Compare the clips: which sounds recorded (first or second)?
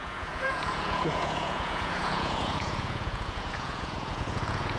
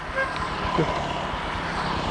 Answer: second